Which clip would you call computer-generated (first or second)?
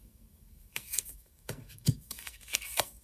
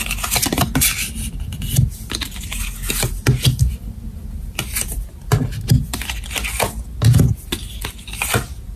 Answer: first